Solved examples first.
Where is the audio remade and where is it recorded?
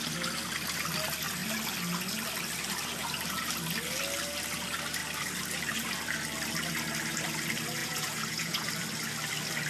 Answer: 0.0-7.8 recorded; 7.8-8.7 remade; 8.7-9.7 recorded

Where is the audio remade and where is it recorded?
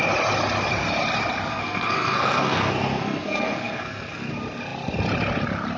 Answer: 0.0-1.5 recorded; 1.5-4.3 remade; 4.3-5.8 recorded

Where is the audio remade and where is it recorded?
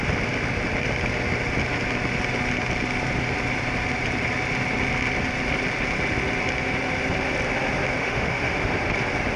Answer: 0.0-8.0 recorded; 8.0-8.6 remade; 8.6-9.4 recorded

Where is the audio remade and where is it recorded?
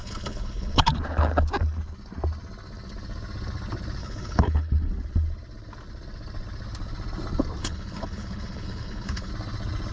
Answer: 0.0-0.9 remade; 0.9-4.0 recorded; 4.0-4.9 remade; 4.9-7.6 recorded; 7.6-9.3 remade; 9.3-9.9 recorded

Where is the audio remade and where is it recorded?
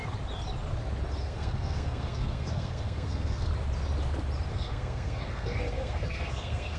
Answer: 0.0-1.2 recorded; 1.2-3.5 remade; 3.5-4.5 recorded; 4.5-6.8 remade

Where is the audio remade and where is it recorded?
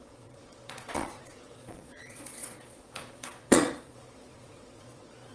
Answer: 0.0-5.3 remade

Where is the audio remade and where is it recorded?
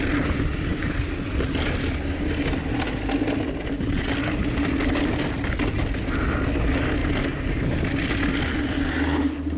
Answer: 0.0-9.6 recorded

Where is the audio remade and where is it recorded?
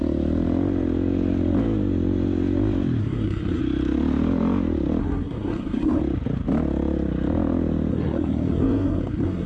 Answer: 0.0-3.0 recorded; 3.0-3.6 remade; 3.6-5.0 recorded; 5.0-6.0 remade; 6.0-7.9 recorded; 7.9-9.5 remade